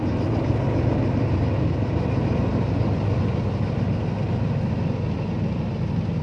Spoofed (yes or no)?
no